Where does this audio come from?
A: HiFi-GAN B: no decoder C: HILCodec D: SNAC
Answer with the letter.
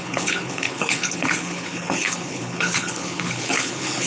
C